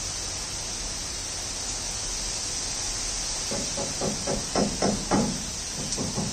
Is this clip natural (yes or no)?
yes